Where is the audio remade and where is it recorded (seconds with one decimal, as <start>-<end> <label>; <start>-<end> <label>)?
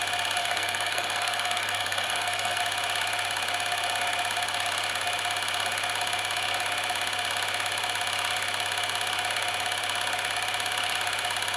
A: 0.0-0.4 recorded; 0.4-2.6 remade; 2.6-11.6 recorded